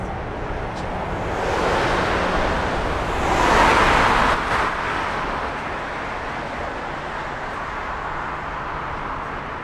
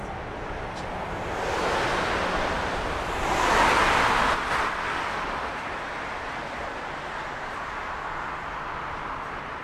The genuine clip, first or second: first